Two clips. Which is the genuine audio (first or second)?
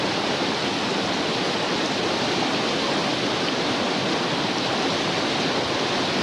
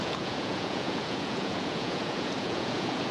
first